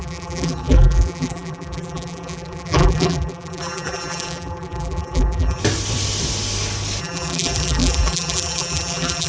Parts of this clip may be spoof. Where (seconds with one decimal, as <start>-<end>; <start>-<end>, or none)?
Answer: 0.0-5.6; 7.0-9.3